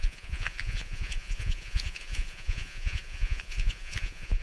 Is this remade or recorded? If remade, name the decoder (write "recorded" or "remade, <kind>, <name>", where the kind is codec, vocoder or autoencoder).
remade, vocoder, Vocos